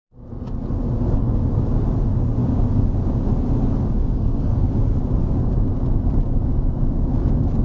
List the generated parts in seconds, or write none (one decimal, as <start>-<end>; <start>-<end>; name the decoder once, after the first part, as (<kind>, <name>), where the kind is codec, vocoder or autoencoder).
4.0-4.7 (codec, SNAC)